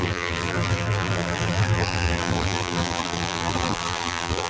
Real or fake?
fake